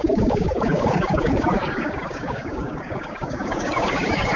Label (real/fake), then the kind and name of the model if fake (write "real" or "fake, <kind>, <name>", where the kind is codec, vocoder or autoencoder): fake, codec, DAC